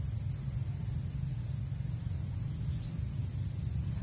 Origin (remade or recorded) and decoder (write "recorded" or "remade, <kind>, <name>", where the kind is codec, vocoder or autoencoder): recorded